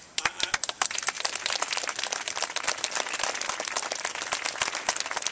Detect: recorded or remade recorded